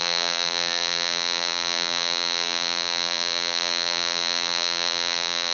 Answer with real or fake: fake